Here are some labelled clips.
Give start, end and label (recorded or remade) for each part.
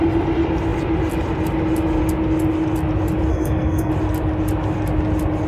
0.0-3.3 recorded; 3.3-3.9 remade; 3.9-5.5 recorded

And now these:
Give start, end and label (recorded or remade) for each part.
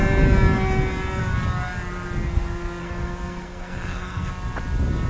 0.0-2.8 recorded; 2.8-4.3 remade; 4.3-5.1 recorded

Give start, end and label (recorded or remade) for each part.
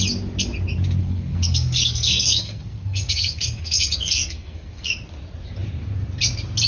0.0-1.0 recorded; 1.0-5.0 remade; 5.0-6.7 recorded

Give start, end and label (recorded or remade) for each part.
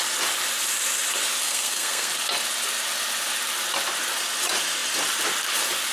0.0-1.4 recorded; 1.4-2.1 remade; 2.1-5.9 recorded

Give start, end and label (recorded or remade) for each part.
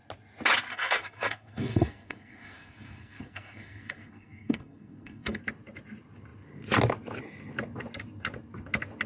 0.0-0.7 recorded; 0.7-5.4 remade; 5.4-9.1 recorded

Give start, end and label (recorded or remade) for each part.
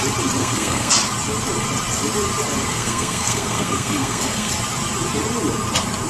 0.0-0.4 recorded; 0.4-0.9 remade; 0.9-2.7 recorded; 2.7-4.5 remade; 4.5-6.1 recorded